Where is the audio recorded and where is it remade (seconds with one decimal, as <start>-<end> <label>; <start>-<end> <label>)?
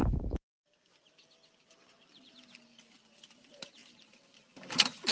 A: 0.0-0.9 remade; 0.9-5.1 recorded